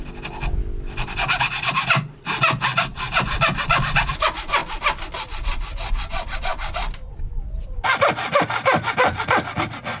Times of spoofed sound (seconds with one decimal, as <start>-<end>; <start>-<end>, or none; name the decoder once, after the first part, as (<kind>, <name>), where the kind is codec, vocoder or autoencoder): none